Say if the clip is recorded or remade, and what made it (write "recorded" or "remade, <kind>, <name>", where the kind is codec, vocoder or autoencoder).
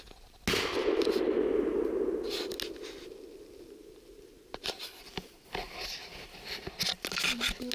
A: recorded